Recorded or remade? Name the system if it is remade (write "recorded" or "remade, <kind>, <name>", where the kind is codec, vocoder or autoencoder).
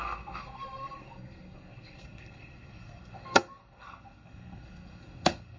remade, codec, SNAC